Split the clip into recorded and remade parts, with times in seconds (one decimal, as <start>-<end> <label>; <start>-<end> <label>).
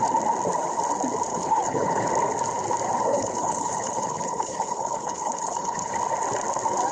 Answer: 0.0-1.3 recorded; 1.3-2.1 remade; 2.1-3.1 recorded; 3.1-5.9 remade; 5.9-6.9 recorded